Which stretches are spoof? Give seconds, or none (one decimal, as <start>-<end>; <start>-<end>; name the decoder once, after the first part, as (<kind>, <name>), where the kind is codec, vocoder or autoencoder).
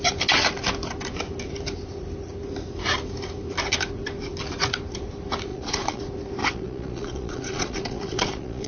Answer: 5.5-6.0 (vocoder, Vocos); 6.4-8.7